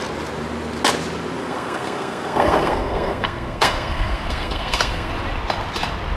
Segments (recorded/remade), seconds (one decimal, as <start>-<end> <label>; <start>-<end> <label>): 0.0-1.4 recorded; 1.4-5.1 remade; 5.1-6.2 recorded